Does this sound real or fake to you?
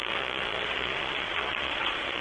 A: fake